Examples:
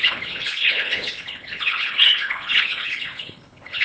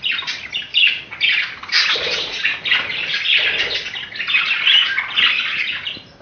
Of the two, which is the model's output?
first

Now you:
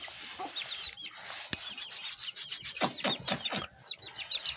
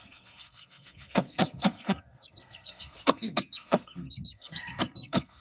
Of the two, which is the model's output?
second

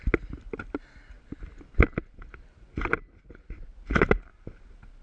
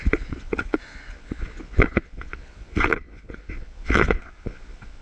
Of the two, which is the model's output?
second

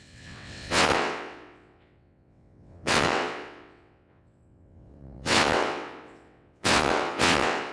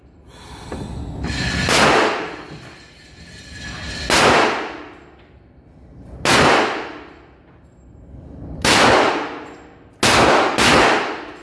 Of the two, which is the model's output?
first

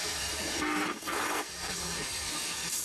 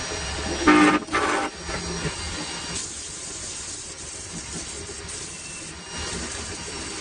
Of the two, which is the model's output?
first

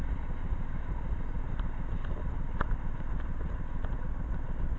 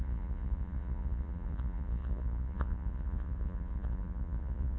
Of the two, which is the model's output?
second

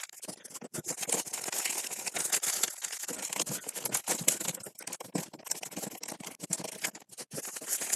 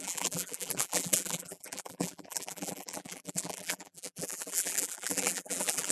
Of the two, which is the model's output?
second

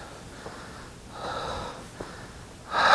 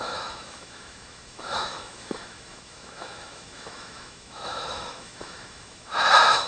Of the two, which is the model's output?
second